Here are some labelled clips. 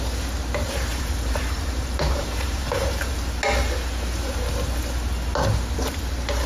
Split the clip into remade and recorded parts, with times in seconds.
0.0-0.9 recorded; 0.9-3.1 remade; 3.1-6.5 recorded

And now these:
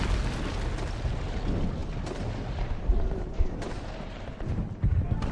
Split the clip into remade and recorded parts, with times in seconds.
0.0-5.3 recorded

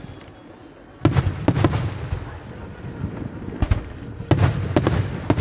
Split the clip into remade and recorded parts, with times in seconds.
0.0-5.4 recorded

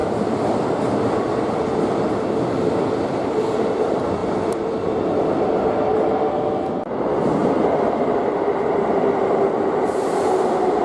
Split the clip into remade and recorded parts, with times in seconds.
0.0-2.1 remade; 2.1-4.2 recorded; 4.2-5.3 remade; 5.3-7.4 recorded; 7.4-10.8 remade

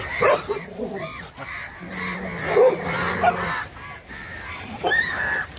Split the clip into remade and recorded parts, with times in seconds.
0.0-1.1 remade; 1.1-4.5 recorded; 4.5-5.6 remade

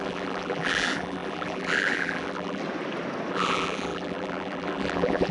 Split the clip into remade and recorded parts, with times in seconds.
0.0-2.6 remade; 2.6-3.3 recorded; 3.3-5.3 remade

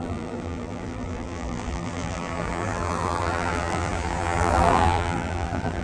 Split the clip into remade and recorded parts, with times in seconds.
0.0-5.8 remade

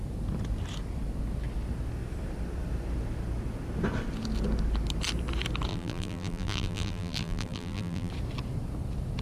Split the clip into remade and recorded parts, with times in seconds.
0.0-5.7 recorded; 5.7-8.1 remade; 8.1-9.2 recorded